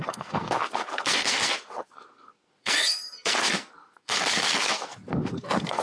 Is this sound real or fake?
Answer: fake